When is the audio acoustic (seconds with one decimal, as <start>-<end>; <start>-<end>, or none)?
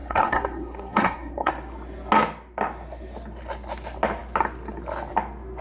1.5-5.6